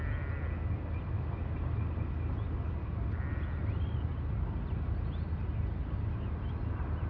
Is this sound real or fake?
real